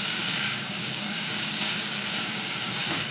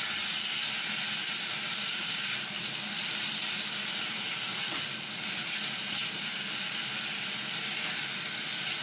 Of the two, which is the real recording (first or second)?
second